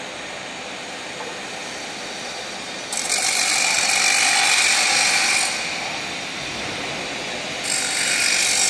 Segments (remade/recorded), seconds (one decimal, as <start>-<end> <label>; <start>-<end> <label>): 0.0-1.6 recorded; 1.6-4.9 remade; 4.9-8.7 recorded